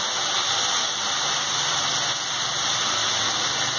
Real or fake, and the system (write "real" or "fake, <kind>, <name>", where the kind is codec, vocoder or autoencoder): real